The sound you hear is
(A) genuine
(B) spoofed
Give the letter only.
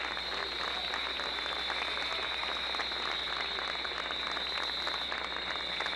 A